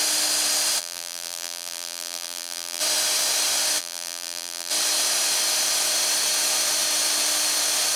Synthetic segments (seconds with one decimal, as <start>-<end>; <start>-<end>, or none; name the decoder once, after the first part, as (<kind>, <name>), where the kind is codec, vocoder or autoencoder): 0.8-2.8 (vocoder, BigVGAN v2); 3.8-4.7